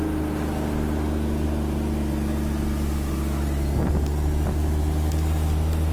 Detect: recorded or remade recorded